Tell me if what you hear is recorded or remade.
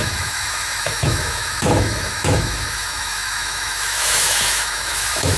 remade